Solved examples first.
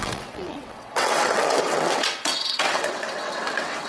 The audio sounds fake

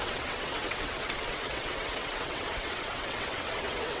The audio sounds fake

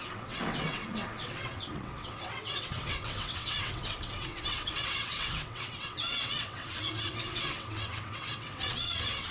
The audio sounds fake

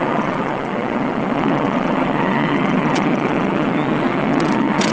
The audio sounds fake